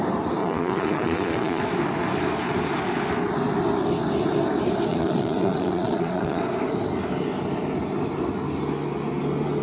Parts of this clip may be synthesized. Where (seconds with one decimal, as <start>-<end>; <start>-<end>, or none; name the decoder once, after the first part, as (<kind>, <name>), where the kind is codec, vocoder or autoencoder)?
0.4-1.6 (vocoder, Vocos); 4.9-6.4